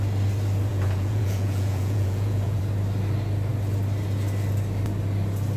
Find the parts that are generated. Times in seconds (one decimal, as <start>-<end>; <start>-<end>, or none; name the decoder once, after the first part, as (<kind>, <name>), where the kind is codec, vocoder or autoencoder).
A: 0.7-2.6 (vocoder, Vocos)